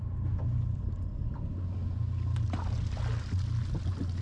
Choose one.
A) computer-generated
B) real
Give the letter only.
B